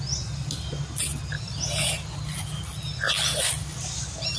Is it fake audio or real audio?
real